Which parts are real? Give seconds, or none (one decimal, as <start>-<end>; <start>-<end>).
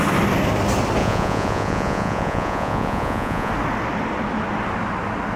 0.0-1.0; 3.5-5.4